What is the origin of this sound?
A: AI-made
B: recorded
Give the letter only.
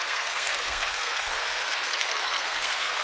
A